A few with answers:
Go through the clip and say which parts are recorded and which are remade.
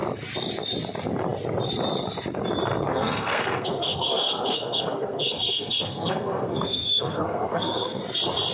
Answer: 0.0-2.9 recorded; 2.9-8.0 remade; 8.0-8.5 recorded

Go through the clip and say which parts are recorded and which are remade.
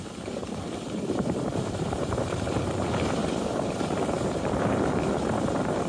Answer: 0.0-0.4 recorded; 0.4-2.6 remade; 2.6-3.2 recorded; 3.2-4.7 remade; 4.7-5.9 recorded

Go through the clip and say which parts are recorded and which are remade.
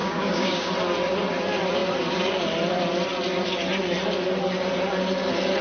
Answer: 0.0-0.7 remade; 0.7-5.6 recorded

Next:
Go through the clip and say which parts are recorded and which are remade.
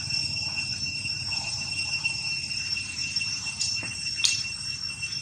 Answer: 0.0-0.7 recorded; 0.7-3.8 remade; 3.8-5.2 recorded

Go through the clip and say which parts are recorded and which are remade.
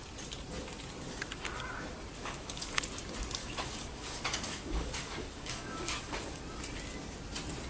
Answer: 0.0-2.2 recorded; 2.2-2.8 remade; 2.8-3.4 recorded; 3.4-6.4 remade; 6.4-7.7 recorded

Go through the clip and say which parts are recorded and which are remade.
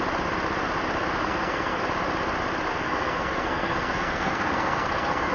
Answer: 0.0-1.2 recorded; 1.2-1.8 remade; 1.8-2.7 recorded; 2.7-5.3 remade